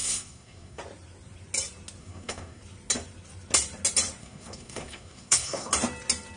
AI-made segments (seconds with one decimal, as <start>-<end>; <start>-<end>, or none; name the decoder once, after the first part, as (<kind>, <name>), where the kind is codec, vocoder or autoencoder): 0.0-0.8 (codec, SNAC); 2.0-2.6; 4.2-5.7